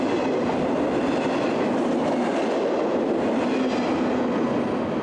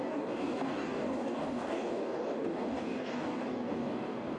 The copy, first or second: second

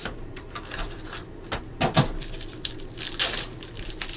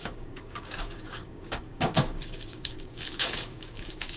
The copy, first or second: second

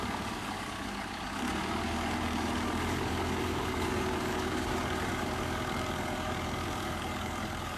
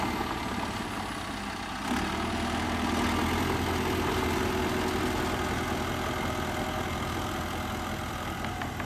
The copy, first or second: first